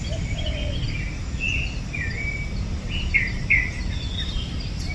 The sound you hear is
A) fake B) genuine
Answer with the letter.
B